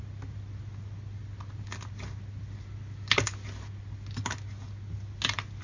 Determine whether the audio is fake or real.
real